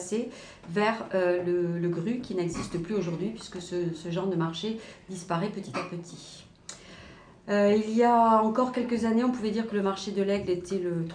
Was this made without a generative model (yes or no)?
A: yes